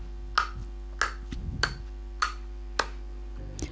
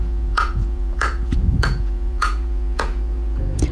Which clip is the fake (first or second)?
second